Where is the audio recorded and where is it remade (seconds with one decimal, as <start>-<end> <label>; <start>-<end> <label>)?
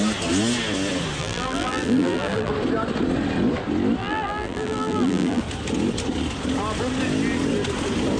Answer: 0.0-1.2 recorded; 1.2-2.5 remade; 2.5-4.0 recorded; 4.0-5.4 remade; 5.4-8.2 recorded